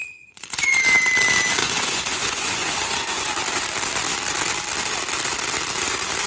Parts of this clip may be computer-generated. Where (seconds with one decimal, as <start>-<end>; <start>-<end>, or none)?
0.0-0.8; 1.6-3.3